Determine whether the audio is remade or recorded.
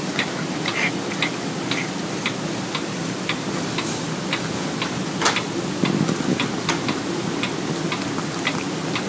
recorded